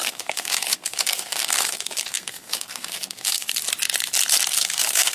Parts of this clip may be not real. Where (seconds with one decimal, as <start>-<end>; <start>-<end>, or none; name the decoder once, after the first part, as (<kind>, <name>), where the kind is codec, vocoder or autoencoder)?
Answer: 0.0-3.6 (codec, SNAC); 4.5-5.1